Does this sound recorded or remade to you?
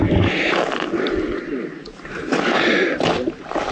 recorded